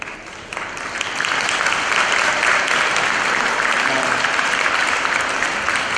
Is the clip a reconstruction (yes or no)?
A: no